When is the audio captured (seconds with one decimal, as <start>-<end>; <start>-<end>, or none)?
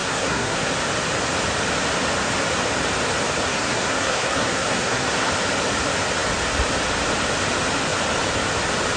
0.7-3.5; 5.3-9.0